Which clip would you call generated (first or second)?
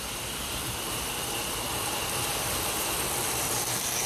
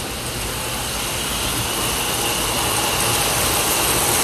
first